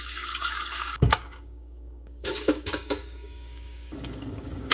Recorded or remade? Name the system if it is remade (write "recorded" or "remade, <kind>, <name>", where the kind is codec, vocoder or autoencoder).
remade, codec, DAC